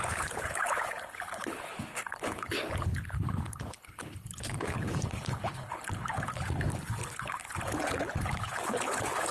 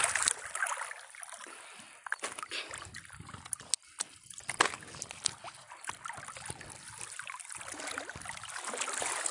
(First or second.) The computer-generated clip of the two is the first